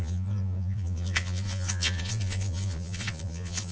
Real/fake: fake